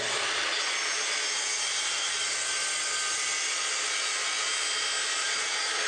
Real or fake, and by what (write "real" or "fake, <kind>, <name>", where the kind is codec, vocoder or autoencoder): real